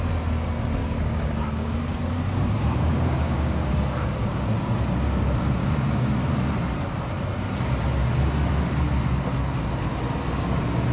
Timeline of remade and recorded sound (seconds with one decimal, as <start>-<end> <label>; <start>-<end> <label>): 0.0-0.8 recorded; 0.8-4.5 remade; 4.5-5.6 recorded; 5.6-6.1 remade; 6.1-10.9 recorded